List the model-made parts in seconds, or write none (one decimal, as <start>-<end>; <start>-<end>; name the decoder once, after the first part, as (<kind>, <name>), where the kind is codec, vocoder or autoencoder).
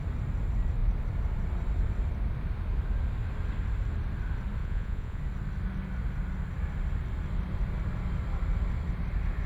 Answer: 4.6-5.2 (vocoder, Vocos)